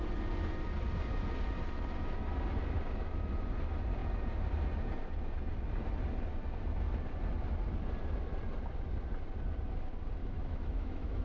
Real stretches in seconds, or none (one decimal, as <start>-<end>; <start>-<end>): 0.0-10.2